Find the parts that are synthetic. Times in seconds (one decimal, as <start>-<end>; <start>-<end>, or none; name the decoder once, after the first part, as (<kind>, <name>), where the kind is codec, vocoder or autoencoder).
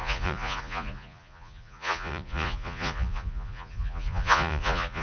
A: 0.0-5.0 (vocoder, Vocos)